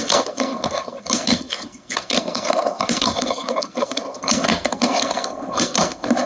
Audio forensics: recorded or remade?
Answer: remade